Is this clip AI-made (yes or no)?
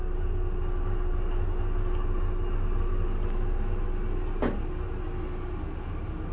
no